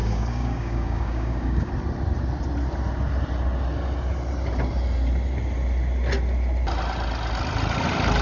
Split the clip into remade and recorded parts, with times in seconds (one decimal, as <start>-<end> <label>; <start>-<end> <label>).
0.0-1.7 remade; 1.7-8.2 recorded